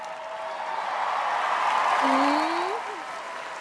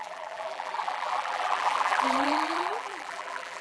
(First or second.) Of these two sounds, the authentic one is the first